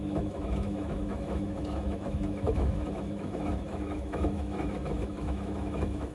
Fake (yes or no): yes